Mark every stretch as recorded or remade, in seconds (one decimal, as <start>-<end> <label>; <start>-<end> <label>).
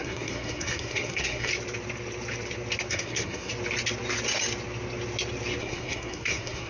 0.0-1.5 remade; 1.5-2.9 recorded; 2.9-3.5 remade; 3.5-5.6 recorded; 5.6-6.7 remade